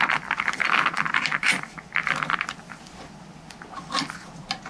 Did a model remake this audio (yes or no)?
no